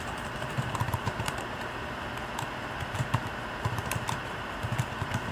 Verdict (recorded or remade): remade